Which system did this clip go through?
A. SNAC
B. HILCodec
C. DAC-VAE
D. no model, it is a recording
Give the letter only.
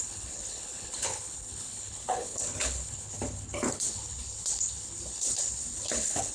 B